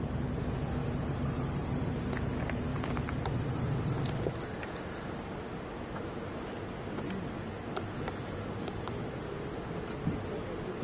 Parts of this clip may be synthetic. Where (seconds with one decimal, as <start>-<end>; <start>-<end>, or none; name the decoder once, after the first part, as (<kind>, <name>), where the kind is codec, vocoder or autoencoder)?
0.8-2.1 (vocoder, BigVGAN v2); 7.5-9.7

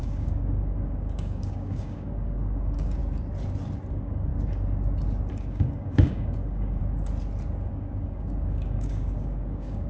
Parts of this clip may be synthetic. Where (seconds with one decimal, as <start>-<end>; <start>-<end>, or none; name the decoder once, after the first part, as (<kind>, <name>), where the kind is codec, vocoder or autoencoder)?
0.0-3.0 (codec, DAC); 3.9-4.3; 5.3-6.8; 7.7-9.9

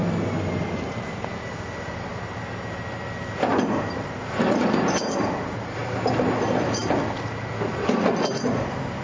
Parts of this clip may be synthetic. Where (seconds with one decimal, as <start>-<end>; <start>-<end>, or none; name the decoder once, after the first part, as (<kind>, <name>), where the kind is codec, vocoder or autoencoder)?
none

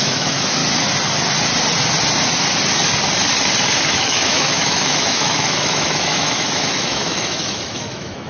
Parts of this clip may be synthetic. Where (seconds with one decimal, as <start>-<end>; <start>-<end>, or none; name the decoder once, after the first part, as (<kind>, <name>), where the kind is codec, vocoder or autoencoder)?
0.0-0.6 (autoencoder, DAC-VAE); 3.9-8.3

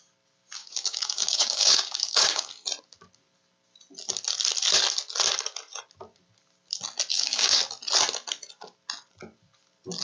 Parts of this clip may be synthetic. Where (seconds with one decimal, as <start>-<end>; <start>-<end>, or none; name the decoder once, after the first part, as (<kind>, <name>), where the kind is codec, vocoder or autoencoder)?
0.6-2.5 (codec, DAC); 7.1-7.6

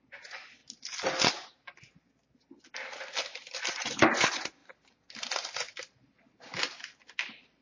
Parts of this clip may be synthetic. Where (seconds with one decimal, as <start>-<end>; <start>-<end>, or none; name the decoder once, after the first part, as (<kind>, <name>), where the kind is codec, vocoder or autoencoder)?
0.0-0.6 (vocoder, Vocos); 3.7-4.6

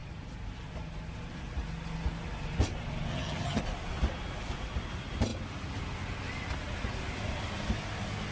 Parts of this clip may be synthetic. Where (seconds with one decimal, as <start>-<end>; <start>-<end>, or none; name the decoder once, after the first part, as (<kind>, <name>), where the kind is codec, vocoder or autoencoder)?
3.1-3.6 (vocoder, HiFi-GAN)

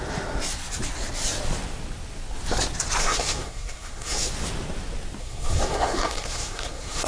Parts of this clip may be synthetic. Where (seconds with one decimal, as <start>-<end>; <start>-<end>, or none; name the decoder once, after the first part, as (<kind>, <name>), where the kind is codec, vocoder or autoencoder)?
3.0-4.3 (codec, SNAC); 5.2-7.1